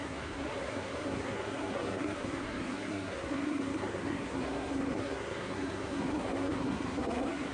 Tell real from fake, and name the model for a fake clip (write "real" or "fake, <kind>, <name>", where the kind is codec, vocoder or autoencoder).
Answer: fake, codec, SNAC